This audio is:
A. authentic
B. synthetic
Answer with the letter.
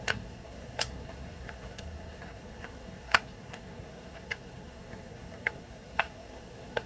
B